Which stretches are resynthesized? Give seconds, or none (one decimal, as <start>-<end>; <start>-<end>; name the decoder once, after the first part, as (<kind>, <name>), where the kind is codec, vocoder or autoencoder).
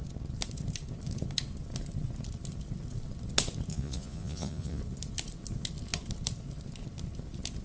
3.7-4.8 (vocoder, Vocos)